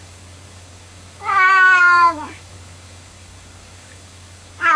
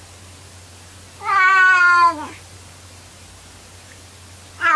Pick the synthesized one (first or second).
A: first